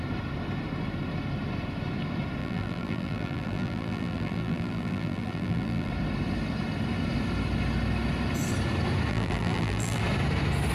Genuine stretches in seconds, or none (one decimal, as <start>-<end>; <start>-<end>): 0.0-2.4; 5.9-9.1; 10.0-10.7